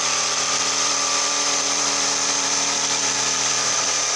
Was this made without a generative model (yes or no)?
no